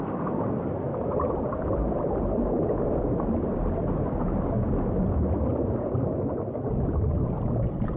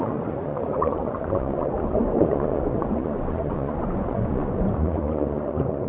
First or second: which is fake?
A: second